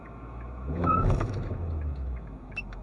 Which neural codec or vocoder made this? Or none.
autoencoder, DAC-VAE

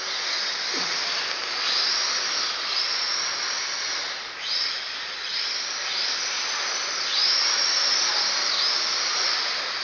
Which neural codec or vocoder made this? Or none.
none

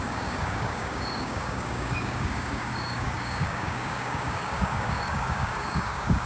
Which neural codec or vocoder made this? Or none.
codec, DAC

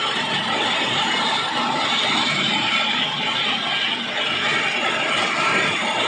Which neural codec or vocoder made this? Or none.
none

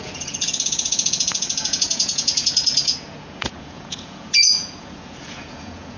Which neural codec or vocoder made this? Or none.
vocoder, Vocos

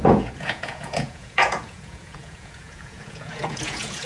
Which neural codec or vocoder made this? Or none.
vocoder, Vocos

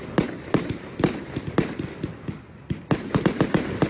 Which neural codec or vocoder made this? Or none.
none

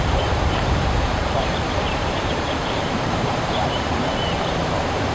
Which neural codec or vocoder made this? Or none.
vocoder, BigVGAN v2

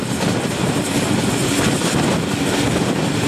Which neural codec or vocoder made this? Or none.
none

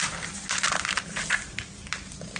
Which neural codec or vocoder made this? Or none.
none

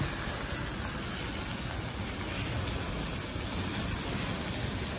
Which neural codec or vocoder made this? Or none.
none